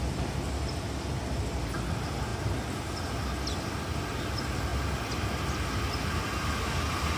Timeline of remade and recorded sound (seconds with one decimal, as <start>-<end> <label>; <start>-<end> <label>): 0.0-7.2 recorded